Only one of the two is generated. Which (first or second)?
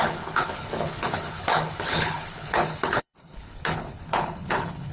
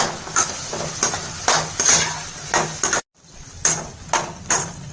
first